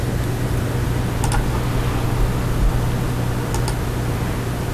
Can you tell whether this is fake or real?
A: real